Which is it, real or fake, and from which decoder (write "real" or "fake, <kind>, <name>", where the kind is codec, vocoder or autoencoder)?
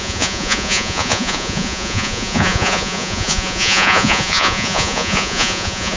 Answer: fake, vocoder, Vocos